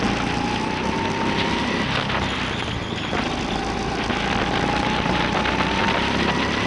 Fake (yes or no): no